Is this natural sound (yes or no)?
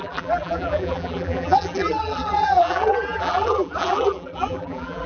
no